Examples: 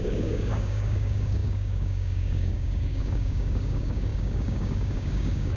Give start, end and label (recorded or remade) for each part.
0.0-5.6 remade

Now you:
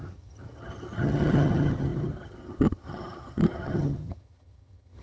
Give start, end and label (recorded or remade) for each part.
0.0-5.0 remade

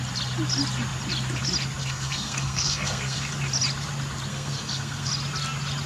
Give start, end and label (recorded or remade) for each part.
0.0-1.8 recorded; 1.8-3.3 remade; 3.3-4.3 recorded; 4.3-5.1 remade; 5.1-5.9 recorded

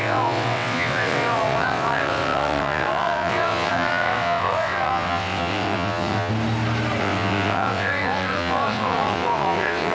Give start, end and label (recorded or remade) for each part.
0.0-6.3 remade; 6.3-7.0 recorded; 7.0-9.9 remade

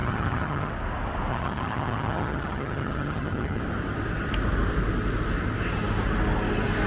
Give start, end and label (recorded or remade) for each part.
0.0-0.7 remade; 0.7-1.3 recorded; 1.3-3.6 remade; 3.6-6.9 recorded

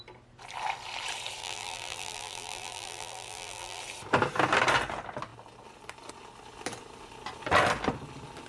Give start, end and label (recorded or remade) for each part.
0.0-1.4 recorded; 1.4-3.8 remade; 3.8-8.5 recorded

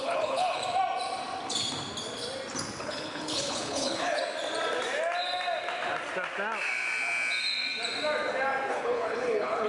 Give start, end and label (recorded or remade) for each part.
0.0-0.6 remade; 0.6-2.8 recorded; 2.8-4.2 remade; 4.2-8.7 recorded; 8.7-9.7 remade